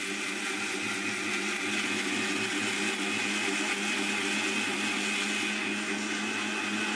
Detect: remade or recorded recorded